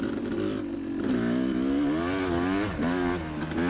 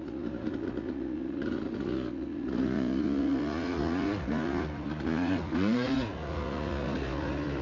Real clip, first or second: first